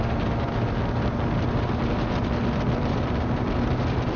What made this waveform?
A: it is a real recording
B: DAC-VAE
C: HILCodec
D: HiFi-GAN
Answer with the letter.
A